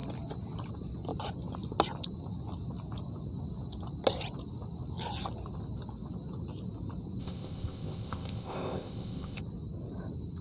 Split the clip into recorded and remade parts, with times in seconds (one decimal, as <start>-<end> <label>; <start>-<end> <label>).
0.0-7.2 recorded; 7.2-9.4 remade; 9.4-10.4 recorded